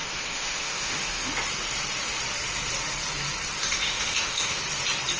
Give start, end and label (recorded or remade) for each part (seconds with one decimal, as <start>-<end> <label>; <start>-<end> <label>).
0.0-1.3 remade; 1.3-3.6 recorded; 3.6-4.6 remade; 4.6-5.2 recorded